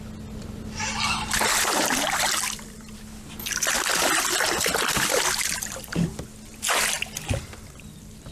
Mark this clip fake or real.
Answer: real